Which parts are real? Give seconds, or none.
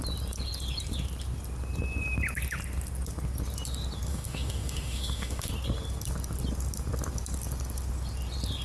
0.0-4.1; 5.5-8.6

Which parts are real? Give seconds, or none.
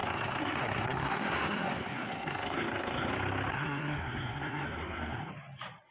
3.1-3.5; 5.3-5.9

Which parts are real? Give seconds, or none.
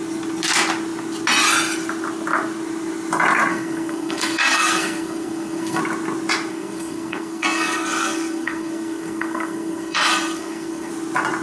0.0-3.5; 5.8-6.5; 10.9-11.4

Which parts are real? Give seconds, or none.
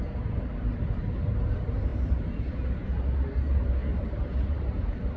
none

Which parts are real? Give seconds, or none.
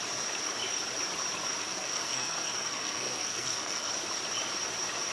0.0-1.6; 3.9-5.1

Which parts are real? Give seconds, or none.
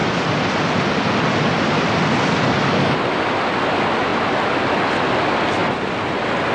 2.3-5.6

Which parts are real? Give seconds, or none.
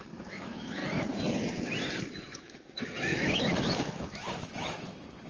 0.8-2.1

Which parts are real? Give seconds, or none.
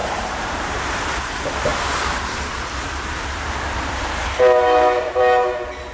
0.8-1.7; 5.2-5.9